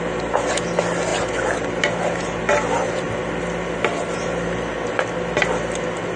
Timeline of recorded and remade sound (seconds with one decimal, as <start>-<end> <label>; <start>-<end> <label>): 0.0-6.2 recorded